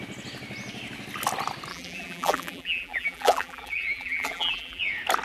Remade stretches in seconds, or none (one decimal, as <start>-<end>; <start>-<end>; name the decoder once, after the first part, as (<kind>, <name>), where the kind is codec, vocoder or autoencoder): 1.7-4.8 (vocoder, BigVGAN v2)